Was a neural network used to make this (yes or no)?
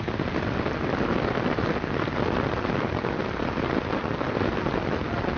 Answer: no